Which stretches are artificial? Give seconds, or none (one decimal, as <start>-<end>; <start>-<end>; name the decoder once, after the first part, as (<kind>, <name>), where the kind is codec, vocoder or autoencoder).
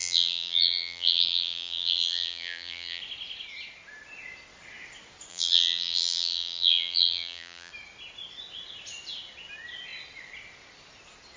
0.0-3.0 (vocoder, BigVGAN v2); 5.3-7.7